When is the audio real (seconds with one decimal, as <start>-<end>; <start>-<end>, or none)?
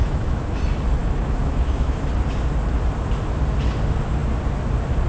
0.6-1.0; 2.1-5.1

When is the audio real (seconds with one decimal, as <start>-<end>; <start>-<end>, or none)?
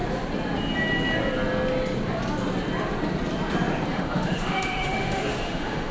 0.0-3.9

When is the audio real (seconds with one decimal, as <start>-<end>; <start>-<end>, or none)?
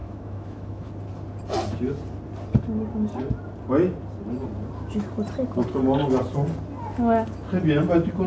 0.9-8.3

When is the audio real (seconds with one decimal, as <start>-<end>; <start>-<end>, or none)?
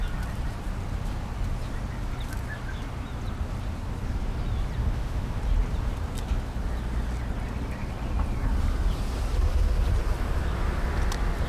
0.0-4.8; 5.4-11.5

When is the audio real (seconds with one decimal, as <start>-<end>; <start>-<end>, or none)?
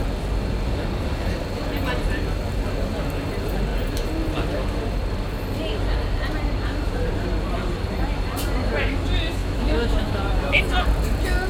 0.0-9.4; 10.6-11.5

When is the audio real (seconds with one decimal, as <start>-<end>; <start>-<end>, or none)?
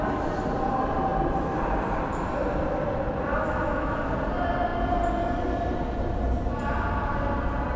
0.0-3.3; 4.1-7.8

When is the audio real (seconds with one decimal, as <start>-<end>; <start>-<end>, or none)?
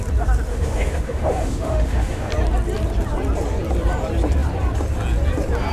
0.0-0.5; 2.3-5.7